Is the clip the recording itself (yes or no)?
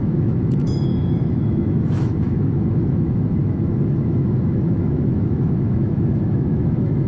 no